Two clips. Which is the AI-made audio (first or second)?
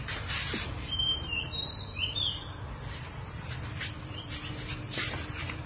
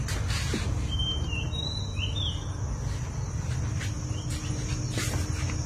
first